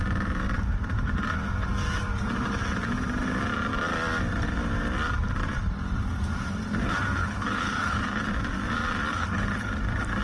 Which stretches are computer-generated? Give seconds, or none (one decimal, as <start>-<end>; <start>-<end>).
7.2-8.3; 9.1-9.7